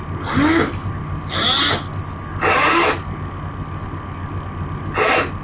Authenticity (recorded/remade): recorded